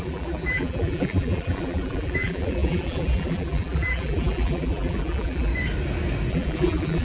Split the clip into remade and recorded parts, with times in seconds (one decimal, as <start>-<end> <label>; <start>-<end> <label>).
0.0-5.5 remade; 5.5-6.3 recorded; 6.3-7.0 remade